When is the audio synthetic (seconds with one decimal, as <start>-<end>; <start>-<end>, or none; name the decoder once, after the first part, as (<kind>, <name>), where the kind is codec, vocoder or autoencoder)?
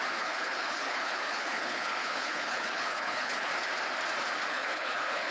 0.0-3.5 (codec, HILCodec); 4.5-5.3